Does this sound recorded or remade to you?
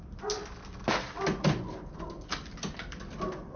recorded